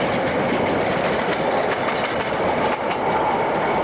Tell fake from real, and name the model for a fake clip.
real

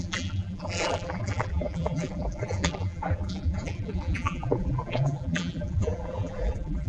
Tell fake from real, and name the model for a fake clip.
fake, vocoder, BigVGAN v2